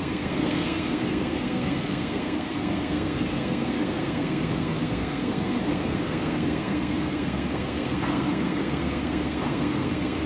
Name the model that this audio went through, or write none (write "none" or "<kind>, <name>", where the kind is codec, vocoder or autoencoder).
codec, SNAC